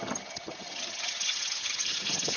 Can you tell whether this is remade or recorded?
remade